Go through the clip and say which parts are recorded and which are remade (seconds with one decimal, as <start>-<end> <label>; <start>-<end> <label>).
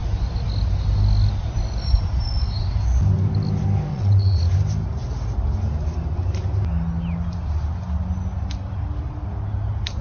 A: 0.0-3.9 recorded; 3.9-4.4 remade; 4.4-10.0 recorded